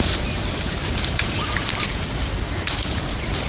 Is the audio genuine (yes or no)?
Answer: no